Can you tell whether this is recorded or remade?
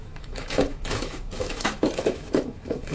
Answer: remade